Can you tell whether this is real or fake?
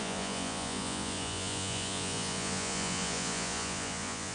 fake